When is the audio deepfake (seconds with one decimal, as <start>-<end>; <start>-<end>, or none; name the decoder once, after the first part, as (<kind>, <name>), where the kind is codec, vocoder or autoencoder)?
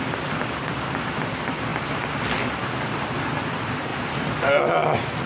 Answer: none